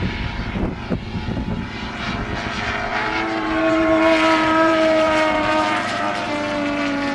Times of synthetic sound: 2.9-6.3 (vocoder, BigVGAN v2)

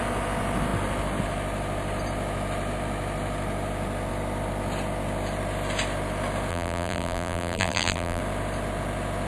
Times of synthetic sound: 6.5-8.2 (vocoder, BigVGAN v2)

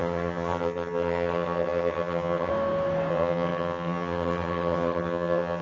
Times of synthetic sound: 0.0-2.5 (vocoder, HiFi-GAN); 3.1-5.6

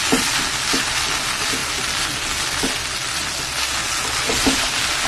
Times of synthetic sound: none

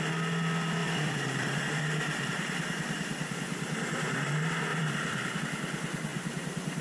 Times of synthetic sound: 0.8-4.3 (vocoder, BigVGAN v2); 4.7-5.4; 6.1-6.8